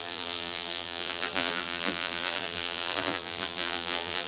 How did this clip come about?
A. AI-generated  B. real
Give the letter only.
A